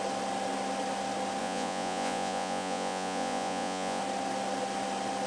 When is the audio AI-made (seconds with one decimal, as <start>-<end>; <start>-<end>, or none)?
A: 1.4-4.0